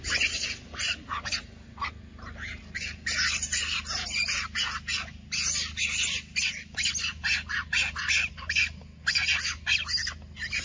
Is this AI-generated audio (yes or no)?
no